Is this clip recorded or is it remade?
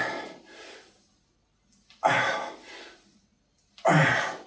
recorded